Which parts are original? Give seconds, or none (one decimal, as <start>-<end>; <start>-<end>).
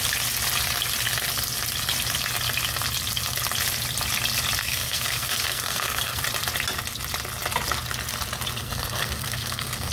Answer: 0.0-4.6; 6.2-8.6